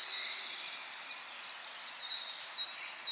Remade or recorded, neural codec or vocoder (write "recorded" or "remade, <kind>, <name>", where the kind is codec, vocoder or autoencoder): recorded